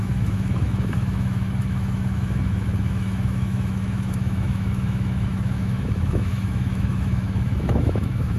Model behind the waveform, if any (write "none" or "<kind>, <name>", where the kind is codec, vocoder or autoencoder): autoencoder, DAC-VAE